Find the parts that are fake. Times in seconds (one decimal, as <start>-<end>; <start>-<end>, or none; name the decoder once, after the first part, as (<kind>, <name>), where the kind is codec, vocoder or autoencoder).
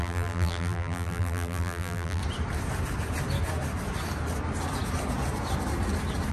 0.0-2.2 (vocoder, BigVGAN v2)